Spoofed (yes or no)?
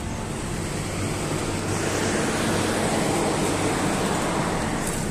no